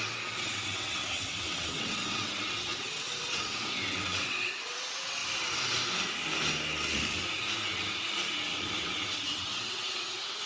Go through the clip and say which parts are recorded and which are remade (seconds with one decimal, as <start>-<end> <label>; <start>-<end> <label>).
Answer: 0.0-5.2 remade; 5.2-8.6 recorded; 8.6-10.5 remade